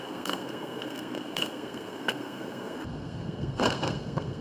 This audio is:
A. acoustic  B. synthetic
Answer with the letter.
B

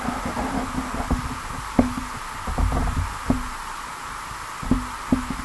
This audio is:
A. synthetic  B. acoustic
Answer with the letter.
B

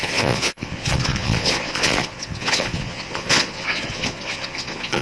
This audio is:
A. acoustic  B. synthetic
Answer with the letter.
B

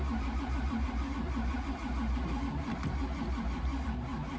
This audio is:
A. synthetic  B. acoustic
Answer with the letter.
B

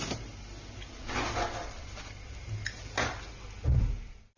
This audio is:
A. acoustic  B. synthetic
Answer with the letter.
A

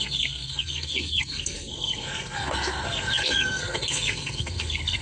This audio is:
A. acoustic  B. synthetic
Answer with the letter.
B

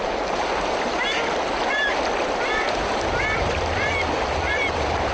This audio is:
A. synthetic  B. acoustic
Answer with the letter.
B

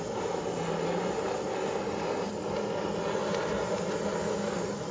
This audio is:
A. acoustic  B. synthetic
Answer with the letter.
A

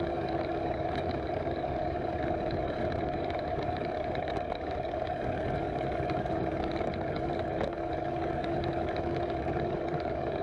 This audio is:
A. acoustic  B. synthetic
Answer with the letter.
B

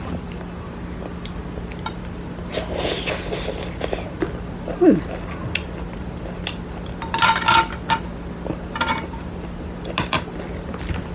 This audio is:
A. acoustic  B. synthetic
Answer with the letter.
A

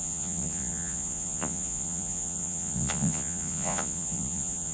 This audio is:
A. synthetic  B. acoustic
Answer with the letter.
A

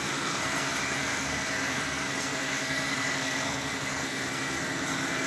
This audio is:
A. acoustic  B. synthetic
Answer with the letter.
B